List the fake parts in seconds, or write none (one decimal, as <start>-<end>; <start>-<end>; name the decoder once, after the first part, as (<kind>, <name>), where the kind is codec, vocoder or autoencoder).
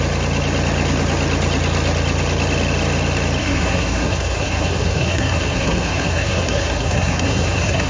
3.4-7.9 (codec, SNAC)